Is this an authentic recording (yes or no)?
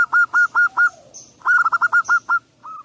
yes